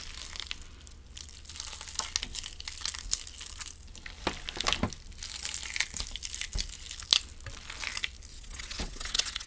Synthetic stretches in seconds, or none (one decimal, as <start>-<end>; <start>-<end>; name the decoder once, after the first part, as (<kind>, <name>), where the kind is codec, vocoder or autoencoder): 8.3-9.5 (vocoder, WaveNeXt)